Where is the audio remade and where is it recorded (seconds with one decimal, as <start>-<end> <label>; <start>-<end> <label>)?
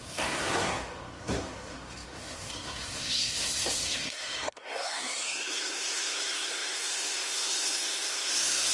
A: 0.0-8.7 remade